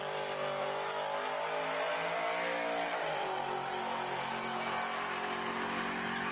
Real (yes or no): yes